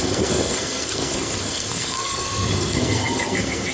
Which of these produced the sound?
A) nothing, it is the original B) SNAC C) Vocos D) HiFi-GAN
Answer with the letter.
B